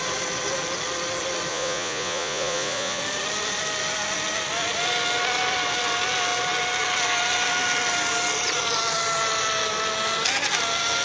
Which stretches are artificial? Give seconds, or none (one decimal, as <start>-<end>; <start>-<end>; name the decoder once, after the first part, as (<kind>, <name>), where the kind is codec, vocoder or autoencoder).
1.5-3.0 (vocoder, Vocos)